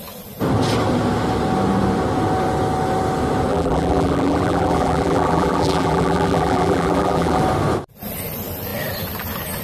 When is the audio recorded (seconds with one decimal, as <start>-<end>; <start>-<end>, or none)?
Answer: 0.0-3.5; 7.4-9.6